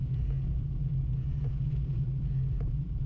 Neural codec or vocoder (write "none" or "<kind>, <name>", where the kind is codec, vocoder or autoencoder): vocoder, Vocos